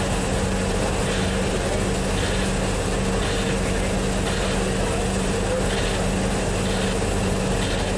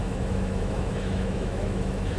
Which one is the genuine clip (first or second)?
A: first